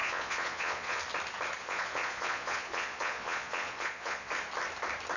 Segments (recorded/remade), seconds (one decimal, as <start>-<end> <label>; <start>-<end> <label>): 0.0-1.0 remade; 1.0-1.6 recorded; 1.6-4.3 remade; 4.3-5.2 recorded